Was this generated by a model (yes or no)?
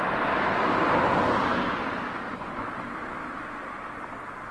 no